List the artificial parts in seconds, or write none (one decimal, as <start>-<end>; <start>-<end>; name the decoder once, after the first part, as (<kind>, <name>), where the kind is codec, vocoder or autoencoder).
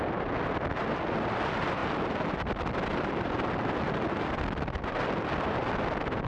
none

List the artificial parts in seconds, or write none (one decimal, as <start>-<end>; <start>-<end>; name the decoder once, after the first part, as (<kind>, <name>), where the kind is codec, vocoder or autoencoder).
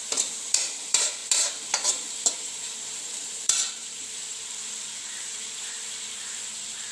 0.0-6.9 (vocoder, BigVGAN v2)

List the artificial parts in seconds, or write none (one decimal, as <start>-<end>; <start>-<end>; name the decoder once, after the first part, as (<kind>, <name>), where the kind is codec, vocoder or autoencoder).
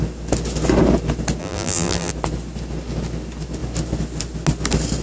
1.4-2.1 (vocoder, BigVGAN v2)